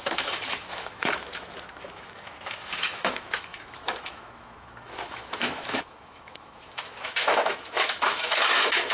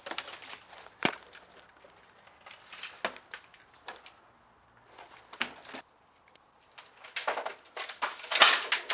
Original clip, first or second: second